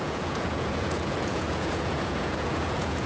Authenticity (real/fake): fake